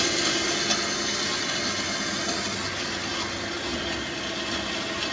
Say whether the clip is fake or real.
real